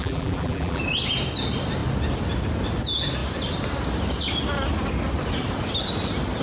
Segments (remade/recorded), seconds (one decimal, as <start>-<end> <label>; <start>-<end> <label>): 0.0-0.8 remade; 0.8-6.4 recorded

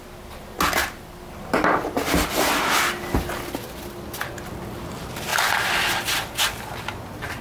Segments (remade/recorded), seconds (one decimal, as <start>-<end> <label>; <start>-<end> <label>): 0.0-7.4 recorded

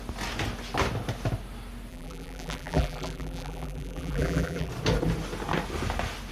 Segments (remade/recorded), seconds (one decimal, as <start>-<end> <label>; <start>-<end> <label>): 0.0-1.9 recorded; 1.9-4.7 remade; 4.7-6.3 recorded